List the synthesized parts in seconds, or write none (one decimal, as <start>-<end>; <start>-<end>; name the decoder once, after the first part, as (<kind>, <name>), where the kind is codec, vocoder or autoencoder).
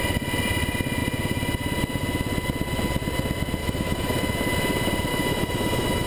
3.6-4.2 (autoencoder, DAC-VAE); 5.1-6.1